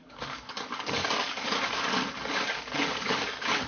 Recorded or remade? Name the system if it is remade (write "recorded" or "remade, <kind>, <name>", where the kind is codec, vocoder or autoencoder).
remade, codec, DAC